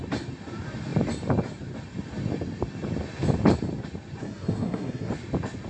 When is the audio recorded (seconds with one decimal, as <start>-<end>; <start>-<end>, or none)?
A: 0.0-4.2; 5.1-5.7